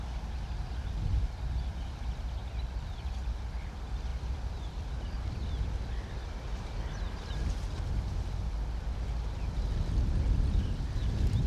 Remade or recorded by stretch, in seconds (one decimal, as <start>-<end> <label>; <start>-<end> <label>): 0.0-4.1 recorded; 4.1-4.9 remade; 4.9-11.5 recorded